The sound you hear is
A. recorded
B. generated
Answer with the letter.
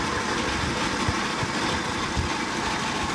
A